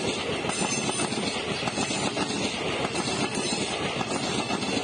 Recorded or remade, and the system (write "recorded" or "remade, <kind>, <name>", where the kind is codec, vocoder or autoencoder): recorded